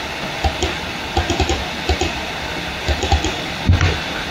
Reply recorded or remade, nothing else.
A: recorded